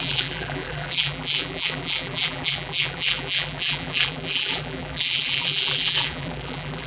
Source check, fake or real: fake